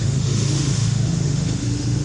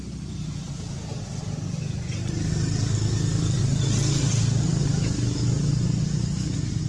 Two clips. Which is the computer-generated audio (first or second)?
first